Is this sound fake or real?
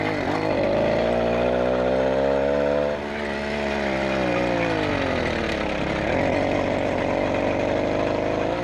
real